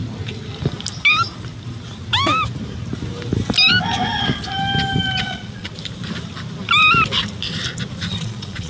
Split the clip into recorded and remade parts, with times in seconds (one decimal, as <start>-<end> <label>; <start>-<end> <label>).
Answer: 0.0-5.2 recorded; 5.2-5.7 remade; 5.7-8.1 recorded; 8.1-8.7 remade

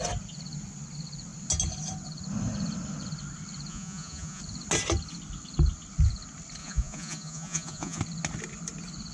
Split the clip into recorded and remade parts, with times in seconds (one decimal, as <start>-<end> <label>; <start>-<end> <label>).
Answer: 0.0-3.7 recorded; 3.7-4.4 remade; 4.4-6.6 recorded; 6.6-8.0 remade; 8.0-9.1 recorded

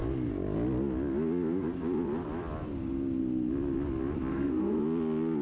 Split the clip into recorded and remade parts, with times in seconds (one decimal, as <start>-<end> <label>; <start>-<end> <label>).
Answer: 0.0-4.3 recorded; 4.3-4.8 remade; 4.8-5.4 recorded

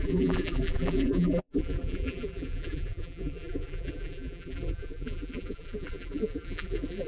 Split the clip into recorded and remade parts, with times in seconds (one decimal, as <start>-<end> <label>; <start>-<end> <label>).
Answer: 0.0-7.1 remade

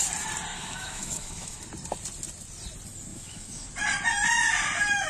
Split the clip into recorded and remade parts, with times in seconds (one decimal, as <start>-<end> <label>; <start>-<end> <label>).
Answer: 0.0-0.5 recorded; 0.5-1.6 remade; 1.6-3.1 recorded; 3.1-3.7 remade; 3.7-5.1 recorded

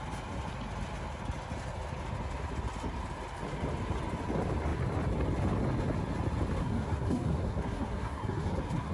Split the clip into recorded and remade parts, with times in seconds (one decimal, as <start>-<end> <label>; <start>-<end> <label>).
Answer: 0.0-6.6 recorded; 6.6-8.9 remade

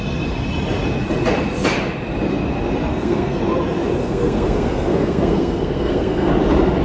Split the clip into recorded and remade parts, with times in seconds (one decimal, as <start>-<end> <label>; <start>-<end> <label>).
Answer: 0.0-2.9 recorded; 2.9-3.4 remade; 3.4-4.0 recorded; 4.0-6.3 remade; 6.3-6.8 recorded

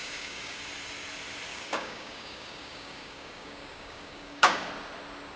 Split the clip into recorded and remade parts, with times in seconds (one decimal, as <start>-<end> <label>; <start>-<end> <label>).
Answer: 0.0-0.6 remade; 0.6-1.5 recorded; 1.5-4.7 remade; 4.7-5.4 recorded